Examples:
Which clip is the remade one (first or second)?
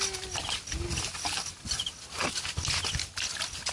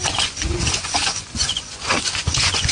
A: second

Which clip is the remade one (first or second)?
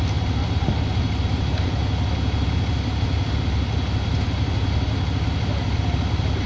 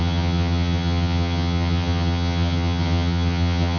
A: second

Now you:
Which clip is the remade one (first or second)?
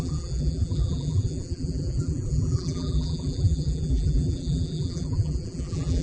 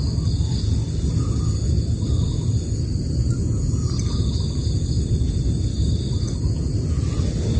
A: first